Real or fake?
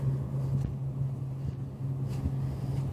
real